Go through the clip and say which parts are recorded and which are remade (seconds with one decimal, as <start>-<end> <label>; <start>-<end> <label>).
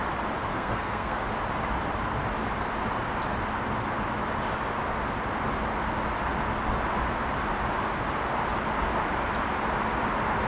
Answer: 0.0-0.5 recorded; 0.5-1.2 remade; 1.2-10.5 recorded